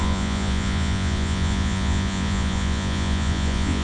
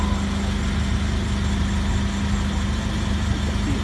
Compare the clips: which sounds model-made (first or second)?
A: first